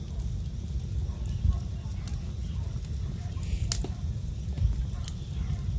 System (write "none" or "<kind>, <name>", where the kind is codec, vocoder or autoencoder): none